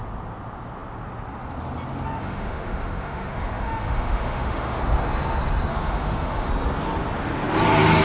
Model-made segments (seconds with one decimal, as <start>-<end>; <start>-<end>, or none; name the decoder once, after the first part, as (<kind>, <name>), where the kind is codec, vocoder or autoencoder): 2.2-4.8 (autoencoder, DAC-VAE); 5.7-6.5